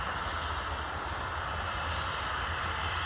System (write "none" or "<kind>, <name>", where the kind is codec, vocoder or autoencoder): none